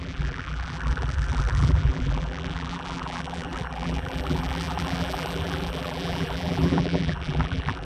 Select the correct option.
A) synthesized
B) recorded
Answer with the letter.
A